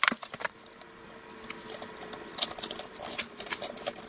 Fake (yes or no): no